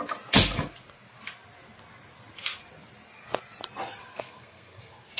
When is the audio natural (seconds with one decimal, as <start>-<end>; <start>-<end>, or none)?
0.0-4.1